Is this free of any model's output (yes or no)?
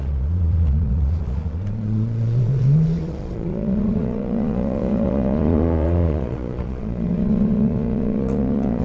no